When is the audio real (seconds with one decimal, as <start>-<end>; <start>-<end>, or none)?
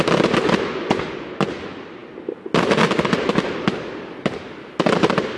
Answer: 0.0-5.4